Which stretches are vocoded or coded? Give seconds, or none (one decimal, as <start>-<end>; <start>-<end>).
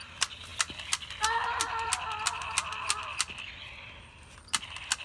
none